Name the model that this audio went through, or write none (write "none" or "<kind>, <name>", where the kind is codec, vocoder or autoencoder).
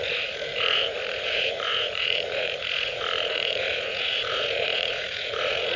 vocoder, Vocos